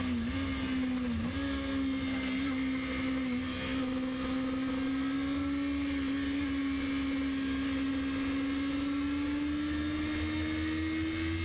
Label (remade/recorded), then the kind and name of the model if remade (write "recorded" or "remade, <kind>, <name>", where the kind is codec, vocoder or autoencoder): recorded